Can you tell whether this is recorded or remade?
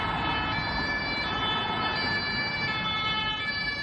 recorded